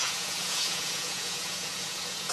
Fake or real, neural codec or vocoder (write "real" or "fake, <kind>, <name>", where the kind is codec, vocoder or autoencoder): fake, vocoder, Vocos